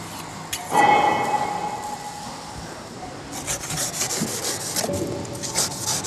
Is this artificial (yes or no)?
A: no